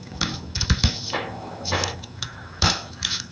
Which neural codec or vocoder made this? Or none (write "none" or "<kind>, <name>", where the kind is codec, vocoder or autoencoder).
autoencoder, DAC-VAE